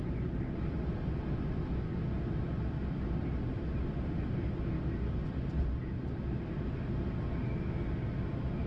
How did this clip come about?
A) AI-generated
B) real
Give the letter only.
B